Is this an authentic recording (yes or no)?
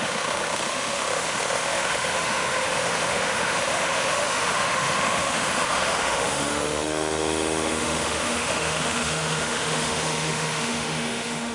no